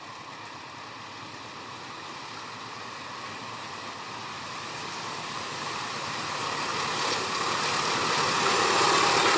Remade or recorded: recorded